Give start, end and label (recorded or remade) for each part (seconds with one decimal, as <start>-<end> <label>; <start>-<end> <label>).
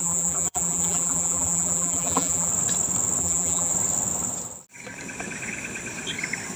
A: 0.0-2.5 remade; 2.5-3.2 recorded; 3.2-3.7 remade; 3.7-6.6 recorded